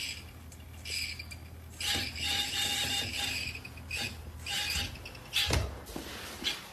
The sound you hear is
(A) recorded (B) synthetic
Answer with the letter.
A